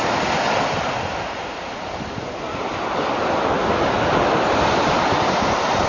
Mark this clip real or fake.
real